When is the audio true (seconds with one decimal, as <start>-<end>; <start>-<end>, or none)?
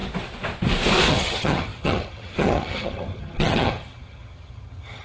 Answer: 0.0-1.1